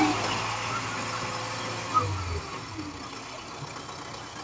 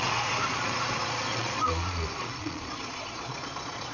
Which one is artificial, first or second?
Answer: second